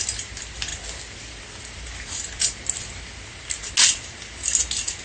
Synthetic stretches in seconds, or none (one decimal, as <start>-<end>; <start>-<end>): none